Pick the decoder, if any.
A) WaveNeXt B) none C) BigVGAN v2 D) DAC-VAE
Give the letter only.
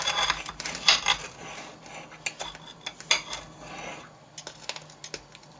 B